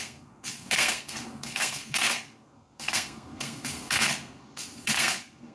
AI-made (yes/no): yes